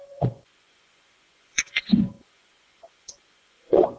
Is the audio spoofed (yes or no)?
yes